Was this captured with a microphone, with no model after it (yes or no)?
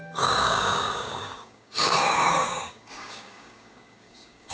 no